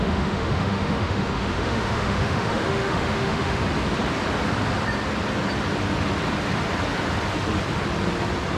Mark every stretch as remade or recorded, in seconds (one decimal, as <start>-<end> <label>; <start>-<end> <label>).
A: 0.0-3.6 remade; 3.6-8.6 recorded

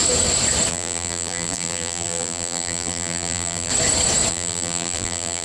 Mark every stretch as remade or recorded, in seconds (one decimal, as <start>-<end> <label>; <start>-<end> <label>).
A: 0.0-0.7 recorded; 0.7-3.7 remade; 3.7-4.3 recorded; 4.3-5.4 remade

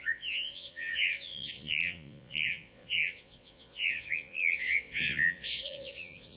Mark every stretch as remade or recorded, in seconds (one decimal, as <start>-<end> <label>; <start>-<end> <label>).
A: 0.0-6.4 remade